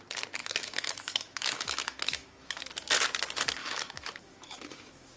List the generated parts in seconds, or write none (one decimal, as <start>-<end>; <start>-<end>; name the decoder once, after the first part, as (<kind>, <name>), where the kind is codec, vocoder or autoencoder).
0.4-2.6 (autoencoder, DAC-VAE); 3.6-5.2